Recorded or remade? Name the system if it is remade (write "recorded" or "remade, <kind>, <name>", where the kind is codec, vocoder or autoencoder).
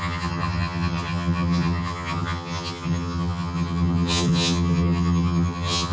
remade, vocoder, HiFi-GAN